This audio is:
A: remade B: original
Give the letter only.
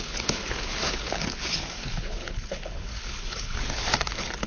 A